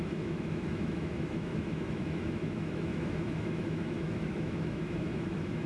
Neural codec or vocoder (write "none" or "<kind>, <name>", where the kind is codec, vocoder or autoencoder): autoencoder, DAC-VAE